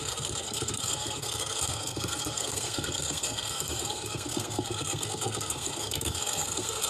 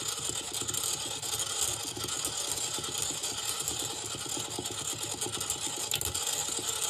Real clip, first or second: second